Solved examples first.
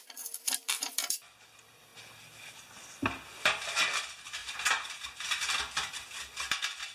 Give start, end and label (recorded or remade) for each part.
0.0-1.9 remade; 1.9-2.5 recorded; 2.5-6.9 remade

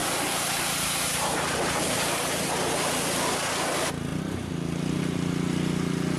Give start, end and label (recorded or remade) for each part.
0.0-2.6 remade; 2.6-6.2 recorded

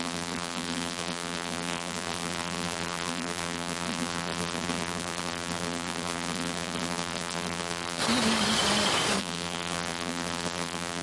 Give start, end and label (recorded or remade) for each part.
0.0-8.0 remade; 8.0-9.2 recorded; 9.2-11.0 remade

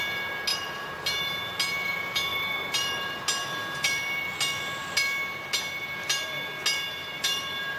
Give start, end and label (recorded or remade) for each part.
0.0-0.5 recorded; 0.5-1.2 remade; 1.2-2.3 recorded; 2.3-3.2 remade; 3.2-7.0 recorded; 7.0-7.8 remade

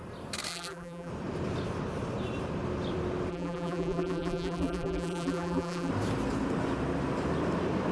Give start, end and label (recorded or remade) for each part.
0.0-0.5 recorded; 0.5-1.1 remade; 1.1-3.3 recorded; 3.3-5.9 remade; 5.9-7.9 recorded